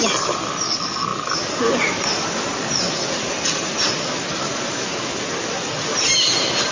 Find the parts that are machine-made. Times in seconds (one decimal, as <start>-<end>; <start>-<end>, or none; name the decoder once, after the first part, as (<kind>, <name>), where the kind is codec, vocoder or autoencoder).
none